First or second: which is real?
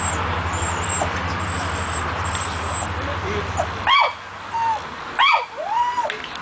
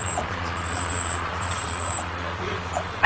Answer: first